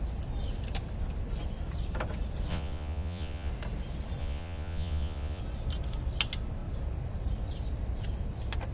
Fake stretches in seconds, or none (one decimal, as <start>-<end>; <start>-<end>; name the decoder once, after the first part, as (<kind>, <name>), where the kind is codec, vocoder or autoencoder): 2.5-3.5 (vocoder, Vocos); 4.2-5.4

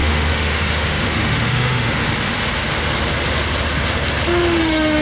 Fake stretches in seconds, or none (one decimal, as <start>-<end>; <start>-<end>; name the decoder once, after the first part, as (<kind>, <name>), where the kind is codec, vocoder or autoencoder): 0.0-2.0 (autoencoder, DAC-VAE); 4.6-5.0

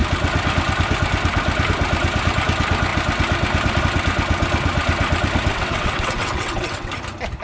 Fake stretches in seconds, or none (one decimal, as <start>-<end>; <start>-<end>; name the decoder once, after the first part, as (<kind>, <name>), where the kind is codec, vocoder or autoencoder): 5.5-6.9 (vocoder, WaveNeXt)

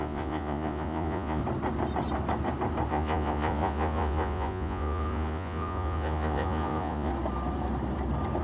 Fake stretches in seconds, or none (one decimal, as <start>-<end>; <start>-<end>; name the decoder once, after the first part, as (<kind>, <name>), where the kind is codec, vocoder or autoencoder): 0.0-1.4 (vocoder, Vocos); 2.9-7.1

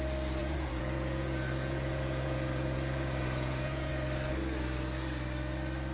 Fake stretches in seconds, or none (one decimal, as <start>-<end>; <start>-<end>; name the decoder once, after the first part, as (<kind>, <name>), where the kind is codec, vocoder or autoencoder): 0.4-3.9 (vocoder, Vocos)